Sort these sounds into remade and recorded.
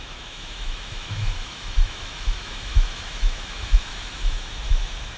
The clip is remade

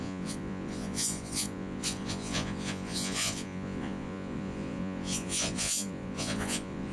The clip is remade